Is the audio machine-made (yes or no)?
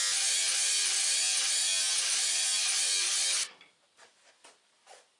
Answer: no